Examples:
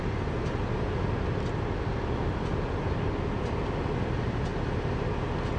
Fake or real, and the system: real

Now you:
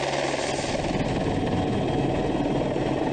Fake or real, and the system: real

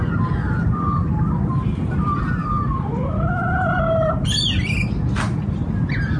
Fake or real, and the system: real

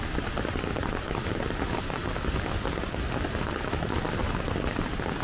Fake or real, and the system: real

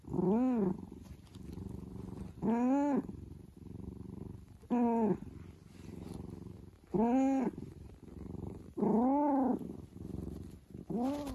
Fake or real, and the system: real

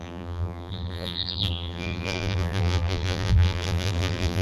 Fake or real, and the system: fake, vocoder, BigVGAN v2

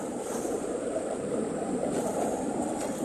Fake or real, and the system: fake, vocoder, BigVGAN v2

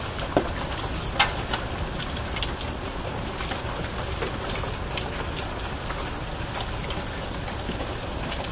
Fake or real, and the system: real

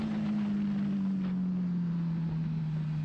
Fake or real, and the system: real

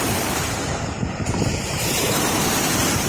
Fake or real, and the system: fake, vocoder, BigVGAN v2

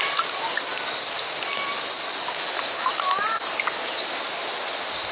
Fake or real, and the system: real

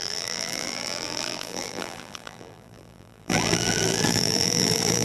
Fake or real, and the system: fake, vocoder, BigVGAN v2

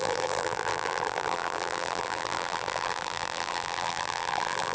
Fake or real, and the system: fake, vocoder, BigVGAN v2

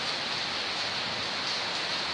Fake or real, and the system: real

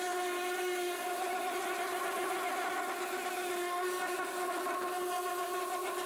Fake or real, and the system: real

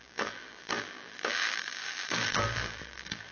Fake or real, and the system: fake, vocoder, BigVGAN v2